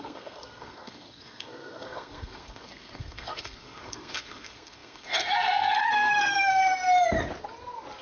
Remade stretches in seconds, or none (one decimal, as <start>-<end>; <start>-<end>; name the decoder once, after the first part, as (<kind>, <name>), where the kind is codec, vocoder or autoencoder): 0.0-6.6 (codec, SNAC)